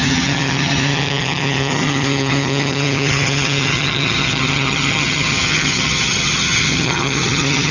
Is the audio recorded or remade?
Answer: remade